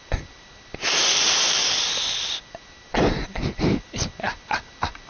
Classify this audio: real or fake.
real